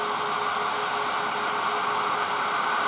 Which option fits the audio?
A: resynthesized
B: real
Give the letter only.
B